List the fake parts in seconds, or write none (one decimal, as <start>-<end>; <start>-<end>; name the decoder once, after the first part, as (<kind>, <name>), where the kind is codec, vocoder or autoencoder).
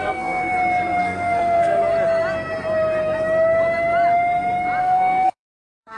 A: 0.0-0.4 (codec, SNAC); 1.0-1.8; 4.8-6.0